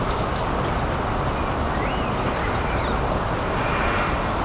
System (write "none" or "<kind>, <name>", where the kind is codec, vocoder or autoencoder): none